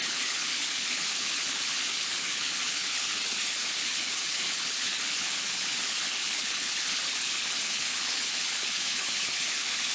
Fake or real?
fake